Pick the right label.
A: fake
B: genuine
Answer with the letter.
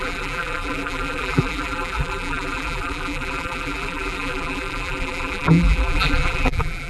A